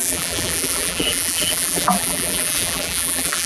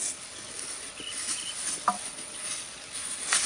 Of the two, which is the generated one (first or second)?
first